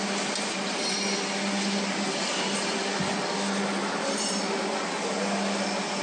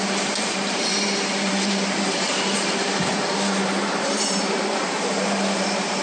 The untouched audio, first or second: first